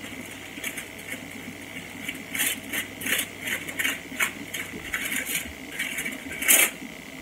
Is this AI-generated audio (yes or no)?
no